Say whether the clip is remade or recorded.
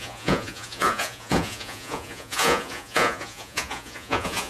remade